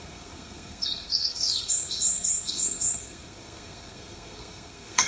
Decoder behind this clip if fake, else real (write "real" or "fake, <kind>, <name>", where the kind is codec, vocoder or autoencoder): fake, codec, SNAC